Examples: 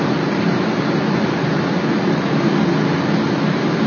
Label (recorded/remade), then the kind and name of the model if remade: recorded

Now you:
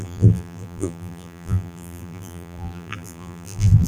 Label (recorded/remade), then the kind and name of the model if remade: remade, vocoder, BigVGAN v2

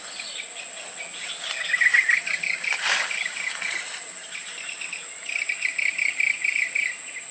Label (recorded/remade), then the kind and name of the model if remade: recorded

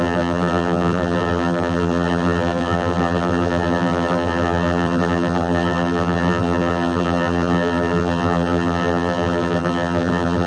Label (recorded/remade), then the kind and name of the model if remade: remade, vocoder, BigVGAN v2